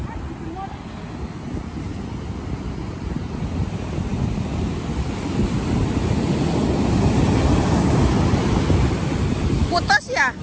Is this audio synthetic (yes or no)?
no